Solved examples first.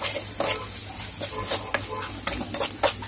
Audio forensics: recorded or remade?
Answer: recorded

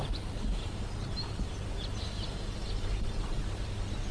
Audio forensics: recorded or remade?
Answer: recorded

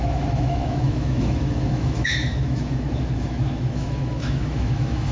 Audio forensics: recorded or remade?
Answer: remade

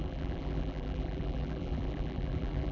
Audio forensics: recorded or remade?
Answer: remade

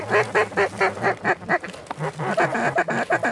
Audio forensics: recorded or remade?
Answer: recorded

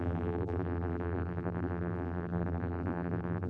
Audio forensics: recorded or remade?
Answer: remade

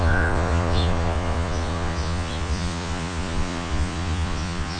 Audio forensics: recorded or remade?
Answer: remade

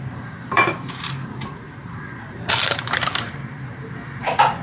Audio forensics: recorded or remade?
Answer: remade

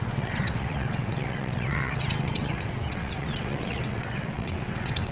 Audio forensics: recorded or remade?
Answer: remade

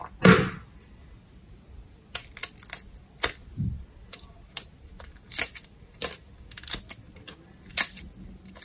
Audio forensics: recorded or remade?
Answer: recorded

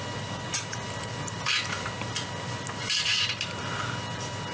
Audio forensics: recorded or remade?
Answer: recorded